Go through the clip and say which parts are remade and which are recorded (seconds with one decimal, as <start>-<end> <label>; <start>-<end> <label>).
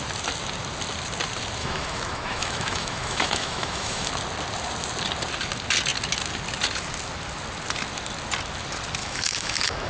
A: 0.0-1.6 recorded; 1.6-4.1 remade; 4.1-9.0 recorded; 9.0-9.9 remade